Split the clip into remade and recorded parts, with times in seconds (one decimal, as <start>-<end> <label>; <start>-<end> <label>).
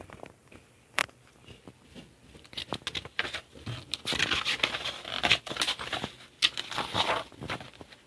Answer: 0.0-8.1 recorded